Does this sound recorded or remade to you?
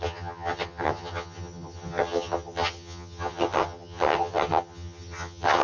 remade